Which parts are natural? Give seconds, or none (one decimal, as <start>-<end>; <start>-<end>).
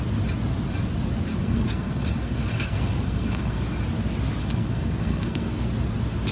0.0-1.3; 3.6-4.4; 5.7-6.3